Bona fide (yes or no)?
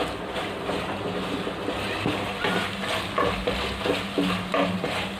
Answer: yes